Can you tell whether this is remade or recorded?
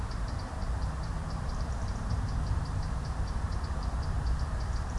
remade